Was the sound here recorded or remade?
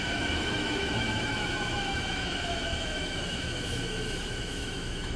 remade